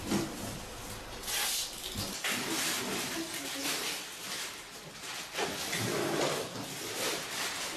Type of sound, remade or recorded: recorded